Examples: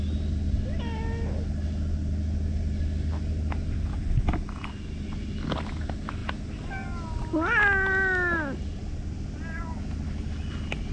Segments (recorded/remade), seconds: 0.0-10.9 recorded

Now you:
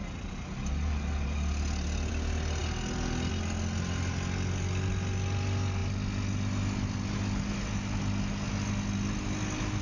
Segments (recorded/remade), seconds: 0.0-9.8 recorded

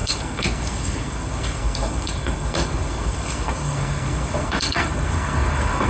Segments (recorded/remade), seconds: 0.0-5.9 remade

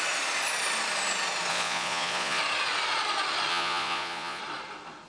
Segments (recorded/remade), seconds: 0.0-1.5 recorded; 1.5-2.4 remade; 2.4-3.5 recorded; 3.5-4.4 remade; 4.4-5.1 recorded

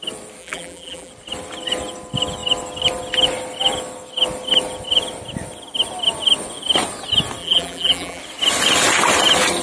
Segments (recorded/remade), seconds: 0.0-0.4 recorded; 0.4-1.1 remade; 1.1-7.4 recorded; 7.4-8.2 remade; 8.2-9.6 recorded

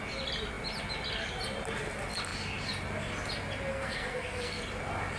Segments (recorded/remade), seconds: 0.0-3.7 recorded; 3.7-4.6 remade; 4.6-5.2 recorded

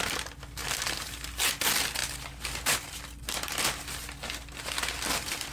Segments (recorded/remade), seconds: 0.0-0.6 recorded; 0.6-1.5 remade; 1.5-2.0 recorded; 2.0-5.5 remade

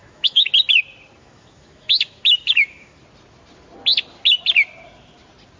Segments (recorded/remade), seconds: 0.0-0.5 remade; 0.5-1.2 recorded; 1.2-3.0 remade; 3.0-5.6 recorded